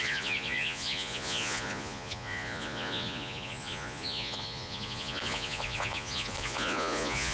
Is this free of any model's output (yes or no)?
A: no